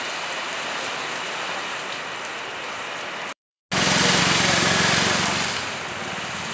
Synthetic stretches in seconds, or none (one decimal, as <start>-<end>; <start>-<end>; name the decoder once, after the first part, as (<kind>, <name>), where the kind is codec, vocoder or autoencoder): 0.0-3.6 (vocoder, BigVGAN v2); 4.2-6.5